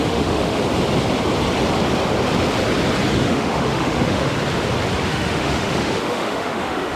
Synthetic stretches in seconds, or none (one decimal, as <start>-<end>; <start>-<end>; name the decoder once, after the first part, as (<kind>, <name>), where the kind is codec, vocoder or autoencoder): 0.0-0.6 (autoencoder, DAC-VAE); 3.1-4.3; 5.1-7.0